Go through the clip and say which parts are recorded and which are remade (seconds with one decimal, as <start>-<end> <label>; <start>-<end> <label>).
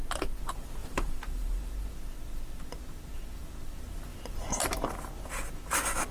0.0-0.8 recorded; 0.8-1.7 remade; 1.7-6.1 recorded